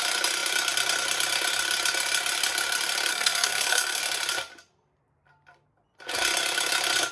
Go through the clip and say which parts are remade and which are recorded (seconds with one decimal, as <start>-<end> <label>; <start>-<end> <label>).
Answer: 0.0-3.1 recorded; 3.1-4.0 remade; 4.0-7.1 recorded